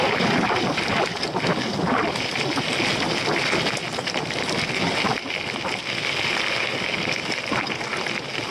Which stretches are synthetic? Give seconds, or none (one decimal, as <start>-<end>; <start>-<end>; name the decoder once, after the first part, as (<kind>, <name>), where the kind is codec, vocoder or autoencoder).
none